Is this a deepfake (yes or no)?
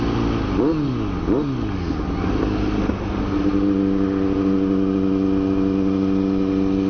no